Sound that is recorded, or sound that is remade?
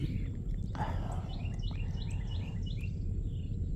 recorded